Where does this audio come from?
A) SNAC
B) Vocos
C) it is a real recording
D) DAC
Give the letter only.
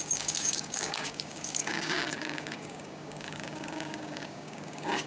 D